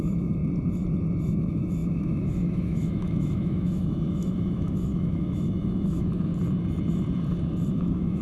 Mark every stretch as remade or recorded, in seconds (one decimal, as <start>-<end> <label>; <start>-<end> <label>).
0.0-0.4 remade; 0.4-1.2 recorded; 1.2-6.3 remade; 6.3-7.7 recorded; 7.7-8.2 remade

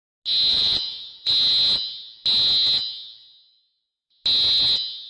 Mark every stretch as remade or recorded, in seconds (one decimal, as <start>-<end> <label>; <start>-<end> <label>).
0.0-0.5 recorded; 0.5-1.3 remade; 1.3-5.1 recorded

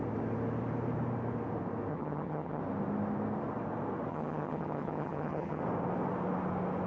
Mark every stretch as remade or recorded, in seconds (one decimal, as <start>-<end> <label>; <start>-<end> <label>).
0.0-1.9 recorded; 1.9-2.6 remade; 2.6-4.1 recorded; 4.1-5.6 remade; 5.6-6.9 recorded

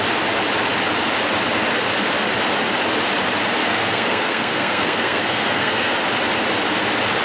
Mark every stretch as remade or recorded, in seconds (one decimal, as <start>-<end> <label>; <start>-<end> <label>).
0.0-3.6 recorded; 3.6-5.9 remade; 5.9-7.2 recorded